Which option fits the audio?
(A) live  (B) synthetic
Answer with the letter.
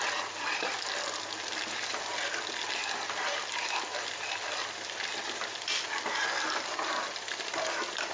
A